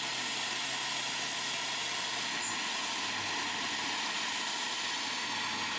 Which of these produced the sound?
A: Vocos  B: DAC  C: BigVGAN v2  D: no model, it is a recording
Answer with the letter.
D